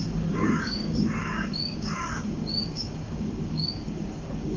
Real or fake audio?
fake